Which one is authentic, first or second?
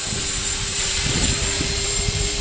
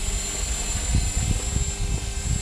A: second